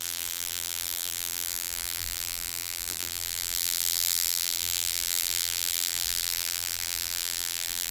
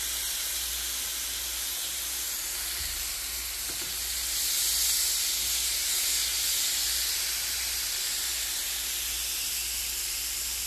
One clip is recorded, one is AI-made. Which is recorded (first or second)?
second